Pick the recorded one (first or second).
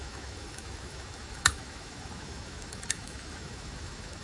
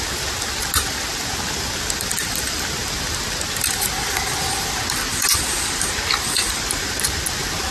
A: second